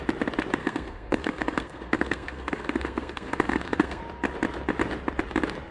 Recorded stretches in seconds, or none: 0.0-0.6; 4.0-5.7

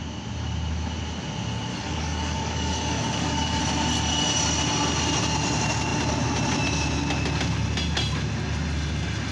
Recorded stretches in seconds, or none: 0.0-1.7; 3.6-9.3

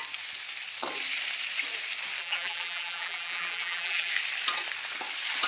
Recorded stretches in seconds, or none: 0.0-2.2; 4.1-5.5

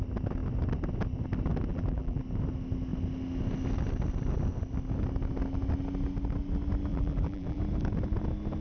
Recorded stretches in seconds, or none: 0.0-1.7; 2.2-6.9; 7.6-8.6

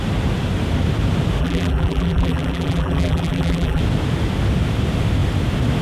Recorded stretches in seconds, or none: 0.0-1.4; 3.8-5.8

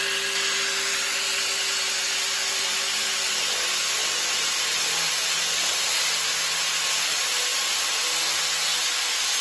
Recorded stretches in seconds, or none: 0.0-9.4